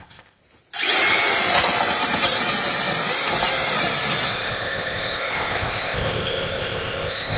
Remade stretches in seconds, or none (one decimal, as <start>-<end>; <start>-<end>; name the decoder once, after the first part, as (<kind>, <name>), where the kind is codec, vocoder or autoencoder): 0.0-0.4 (codec, ZipCodec); 4.3-7.4